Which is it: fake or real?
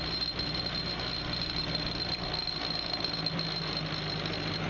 real